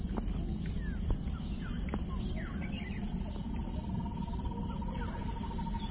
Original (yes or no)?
yes